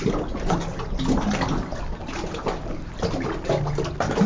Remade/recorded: recorded